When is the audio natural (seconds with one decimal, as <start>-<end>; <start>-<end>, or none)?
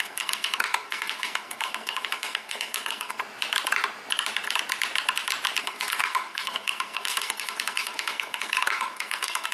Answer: 3.2-5.6